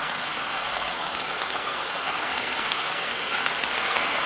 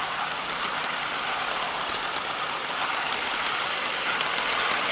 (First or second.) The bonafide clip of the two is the second